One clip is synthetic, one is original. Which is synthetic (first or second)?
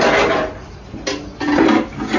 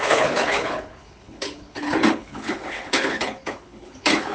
second